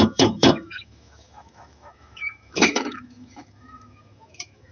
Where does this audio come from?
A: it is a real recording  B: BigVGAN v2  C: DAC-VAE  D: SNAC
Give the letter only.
C